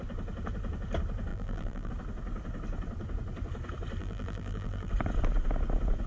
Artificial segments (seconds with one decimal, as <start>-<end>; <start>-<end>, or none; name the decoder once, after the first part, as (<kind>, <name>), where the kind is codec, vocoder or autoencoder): 1.3-1.9 (vocoder, BigVGAN v2); 4.0-4.9